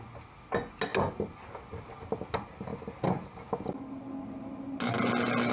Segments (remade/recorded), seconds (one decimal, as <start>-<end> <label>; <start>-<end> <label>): 0.0-5.5 recorded